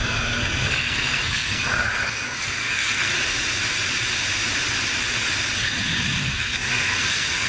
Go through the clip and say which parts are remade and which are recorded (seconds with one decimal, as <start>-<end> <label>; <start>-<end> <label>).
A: 0.0-3.1 remade; 3.1-6.2 recorded; 6.2-7.5 remade